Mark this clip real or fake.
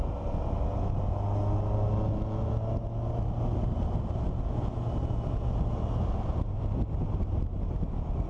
real